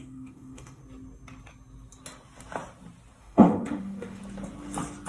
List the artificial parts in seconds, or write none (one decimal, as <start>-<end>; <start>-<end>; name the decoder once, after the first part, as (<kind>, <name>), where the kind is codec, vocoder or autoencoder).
0.0-0.8 (autoencoder, DAC-VAE); 3.2-4.2